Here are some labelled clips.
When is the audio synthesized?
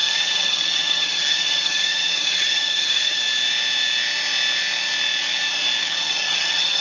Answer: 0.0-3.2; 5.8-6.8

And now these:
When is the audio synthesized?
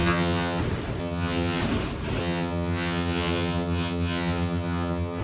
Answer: 0.0-0.6; 1.0-1.6; 2.2-5.2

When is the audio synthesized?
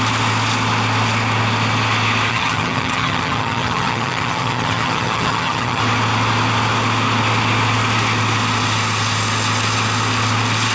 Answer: 2.3-5.8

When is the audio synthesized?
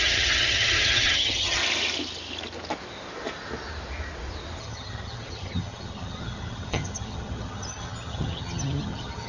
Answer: 0.0-1.6; 4.6-9.3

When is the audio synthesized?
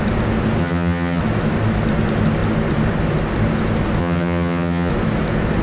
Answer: 0.6-1.2; 4.0-4.9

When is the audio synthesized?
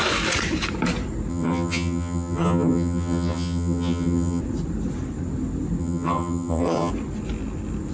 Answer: 1.3-4.4; 5.8-6.9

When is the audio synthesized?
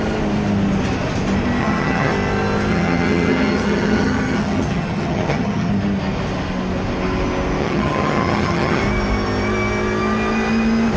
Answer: 1.6-2.1; 2.7-5.7; 7.6-8.8